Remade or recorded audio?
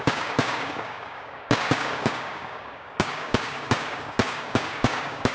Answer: remade